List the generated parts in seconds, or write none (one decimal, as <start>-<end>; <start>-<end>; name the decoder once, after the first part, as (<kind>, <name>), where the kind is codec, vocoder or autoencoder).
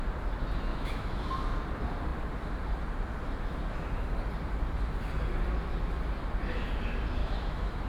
0.7-1.2 (autoencoder, DAC-VAE); 7.2-7.9